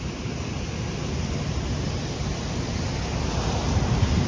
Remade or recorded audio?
recorded